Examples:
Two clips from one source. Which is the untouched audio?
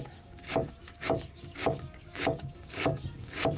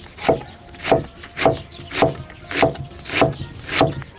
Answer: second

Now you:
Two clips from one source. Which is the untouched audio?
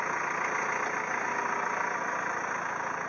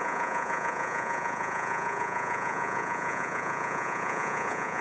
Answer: first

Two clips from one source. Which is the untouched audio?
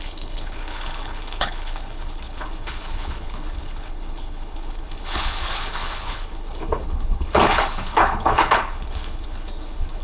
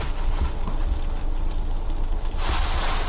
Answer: second